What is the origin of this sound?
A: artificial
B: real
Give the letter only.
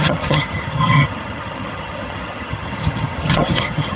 A